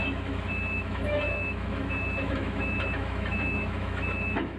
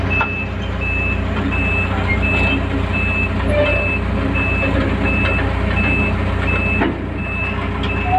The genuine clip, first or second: second